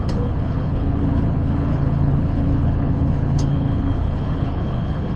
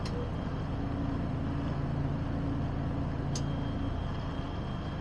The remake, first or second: first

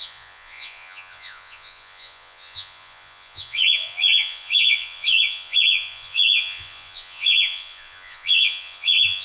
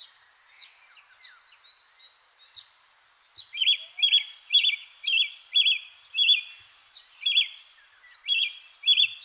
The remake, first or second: first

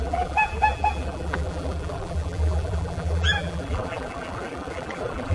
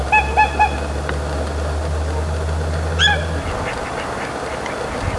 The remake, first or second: first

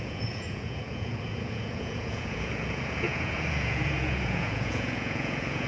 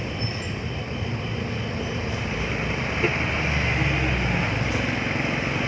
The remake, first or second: first